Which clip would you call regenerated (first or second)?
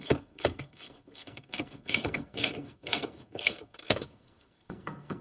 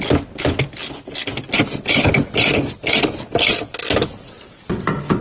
first